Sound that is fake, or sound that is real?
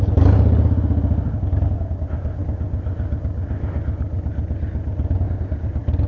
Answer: real